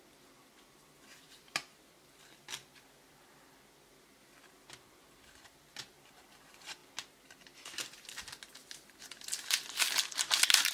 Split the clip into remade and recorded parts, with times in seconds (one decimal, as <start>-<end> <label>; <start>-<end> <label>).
0.0-6.8 remade; 6.8-9.1 recorded; 9.1-10.7 remade